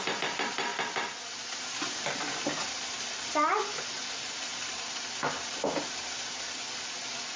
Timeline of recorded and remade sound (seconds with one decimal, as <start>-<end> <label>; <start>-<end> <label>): 0.0-0.7 recorded; 0.7-3.0 remade; 3.0-4.5 recorded; 4.5-5.1 remade; 5.1-7.4 recorded